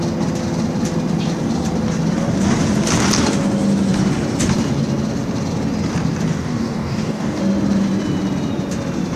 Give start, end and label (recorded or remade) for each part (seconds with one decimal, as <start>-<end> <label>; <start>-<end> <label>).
0.0-6.3 recorded; 6.3-7.4 remade; 7.4-9.2 recorded